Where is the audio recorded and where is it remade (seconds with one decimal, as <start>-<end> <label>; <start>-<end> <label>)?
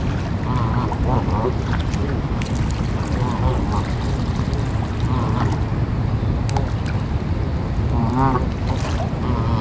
0.0-9.6 recorded